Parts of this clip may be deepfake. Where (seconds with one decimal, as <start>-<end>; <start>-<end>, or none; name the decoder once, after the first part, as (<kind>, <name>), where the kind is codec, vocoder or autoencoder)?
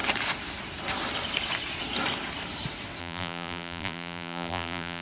3.0-5.0 (vocoder, BigVGAN v2)